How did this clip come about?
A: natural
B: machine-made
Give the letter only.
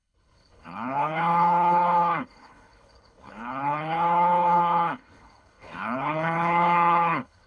B